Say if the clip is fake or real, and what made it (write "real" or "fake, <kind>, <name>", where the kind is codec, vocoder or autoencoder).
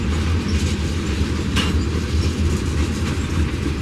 real